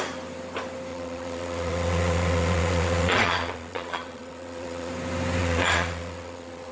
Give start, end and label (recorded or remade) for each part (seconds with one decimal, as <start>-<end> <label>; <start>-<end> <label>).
0.0-0.9 recorded; 0.9-4.9 remade; 4.9-5.4 recorded; 5.4-6.7 remade